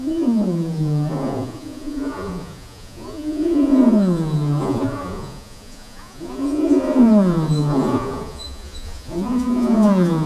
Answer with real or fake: fake